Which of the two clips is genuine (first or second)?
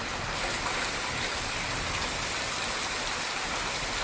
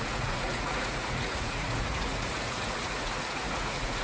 first